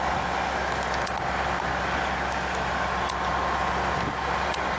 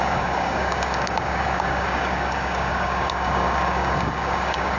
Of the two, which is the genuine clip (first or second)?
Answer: first